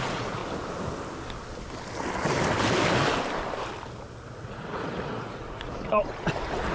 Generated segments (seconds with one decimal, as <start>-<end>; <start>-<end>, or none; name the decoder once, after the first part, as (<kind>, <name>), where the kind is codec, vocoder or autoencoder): 0.0-0.4 (vocoder, Vocos); 4.3-6.7